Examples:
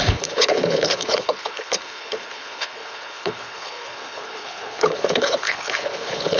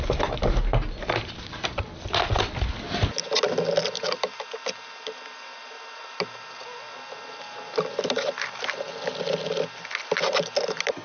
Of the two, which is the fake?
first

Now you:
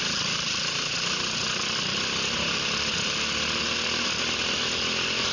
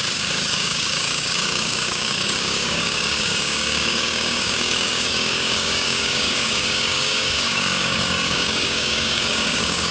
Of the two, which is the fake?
second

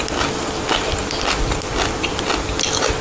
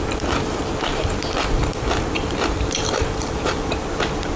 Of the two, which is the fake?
second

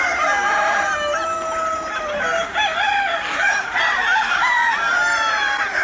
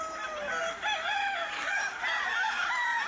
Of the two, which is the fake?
first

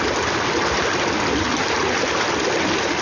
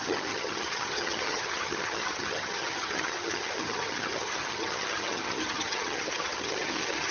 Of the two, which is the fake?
second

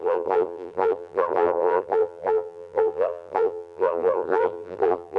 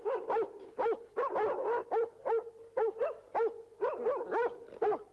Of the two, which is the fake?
first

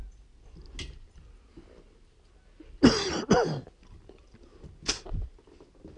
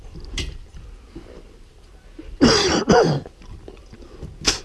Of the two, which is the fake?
second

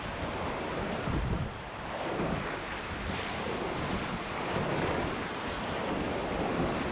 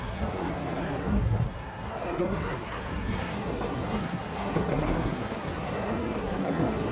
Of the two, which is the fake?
second